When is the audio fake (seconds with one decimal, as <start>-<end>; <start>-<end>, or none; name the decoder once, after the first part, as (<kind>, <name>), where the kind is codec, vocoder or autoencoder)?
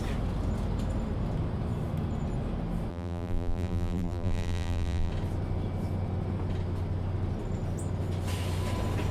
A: 2.9-5.1 (vocoder, BigVGAN v2)